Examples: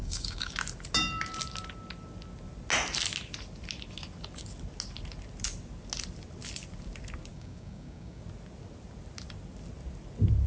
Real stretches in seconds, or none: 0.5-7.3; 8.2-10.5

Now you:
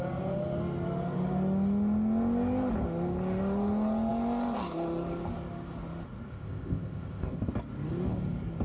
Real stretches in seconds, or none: 0.0-6.3; 7.5-8.6

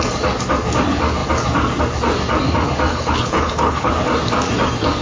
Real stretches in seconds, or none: 0.0-2.9; 3.9-5.0

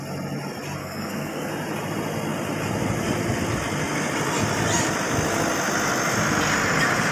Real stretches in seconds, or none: 0.0-0.8; 1.5-7.1

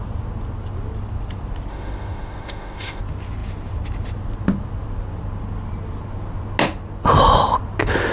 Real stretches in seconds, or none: 0.0-1.7; 3.0-8.1

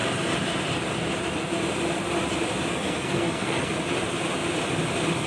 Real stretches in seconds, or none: 0.0-2.7; 3.7-5.3

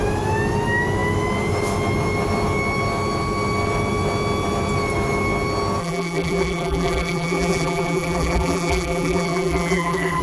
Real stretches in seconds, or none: 0.0-5.8